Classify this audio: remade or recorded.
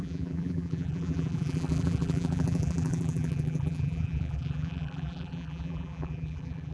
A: remade